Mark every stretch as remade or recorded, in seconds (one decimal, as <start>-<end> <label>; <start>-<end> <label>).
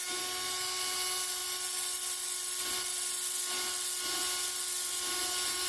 0.0-5.7 recorded